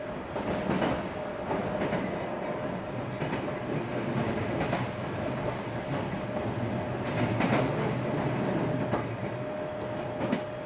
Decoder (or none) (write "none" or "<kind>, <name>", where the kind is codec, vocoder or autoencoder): none